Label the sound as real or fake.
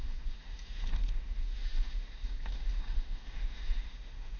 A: fake